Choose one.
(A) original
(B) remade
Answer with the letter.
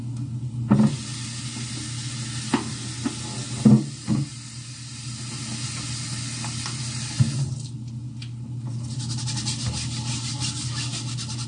A